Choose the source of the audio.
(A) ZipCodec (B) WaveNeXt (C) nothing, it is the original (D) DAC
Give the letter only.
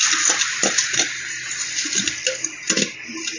C